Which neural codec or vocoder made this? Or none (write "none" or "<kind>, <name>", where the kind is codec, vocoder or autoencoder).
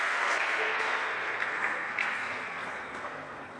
codec, SNAC